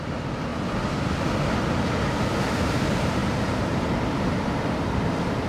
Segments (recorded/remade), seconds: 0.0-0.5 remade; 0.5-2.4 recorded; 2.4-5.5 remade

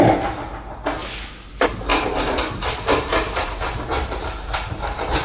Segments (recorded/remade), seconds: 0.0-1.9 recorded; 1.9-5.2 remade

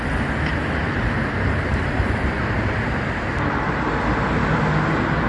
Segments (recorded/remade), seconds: 0.0-0.8 recorded; 0.8-4.0 remade; 4.0-5.3 recorded